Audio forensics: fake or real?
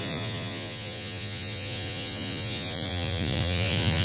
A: fake